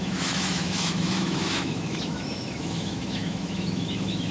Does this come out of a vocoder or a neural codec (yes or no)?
yes